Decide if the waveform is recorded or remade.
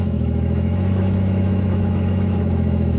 remade